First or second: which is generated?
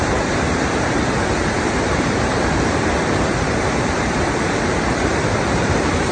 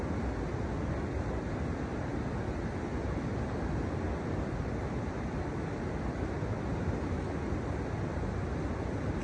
first